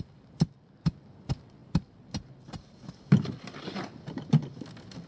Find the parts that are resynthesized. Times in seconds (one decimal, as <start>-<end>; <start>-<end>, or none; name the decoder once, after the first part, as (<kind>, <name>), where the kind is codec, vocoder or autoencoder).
none